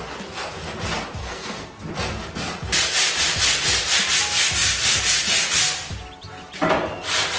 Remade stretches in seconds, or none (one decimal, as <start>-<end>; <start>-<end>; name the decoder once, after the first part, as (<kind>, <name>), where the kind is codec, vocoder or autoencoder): 1.2-1.8 (codec, SNAC)